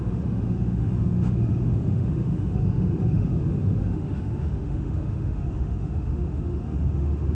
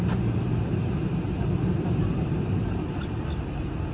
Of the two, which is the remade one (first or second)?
first